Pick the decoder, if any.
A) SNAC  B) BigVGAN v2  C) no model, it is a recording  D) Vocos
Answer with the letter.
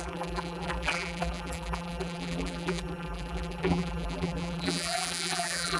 B